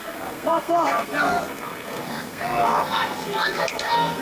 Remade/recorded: remade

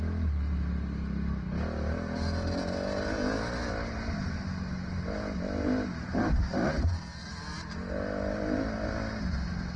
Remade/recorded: recorded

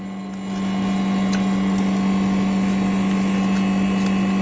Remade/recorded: recorded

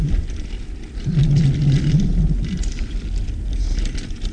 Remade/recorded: recorded